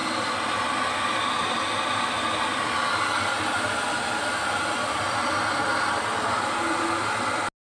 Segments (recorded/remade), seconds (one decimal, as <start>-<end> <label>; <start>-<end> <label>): 0.0-7.8 recorded